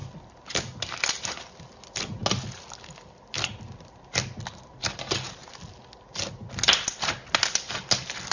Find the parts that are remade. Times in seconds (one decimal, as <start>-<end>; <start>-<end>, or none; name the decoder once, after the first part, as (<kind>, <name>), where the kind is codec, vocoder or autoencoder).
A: none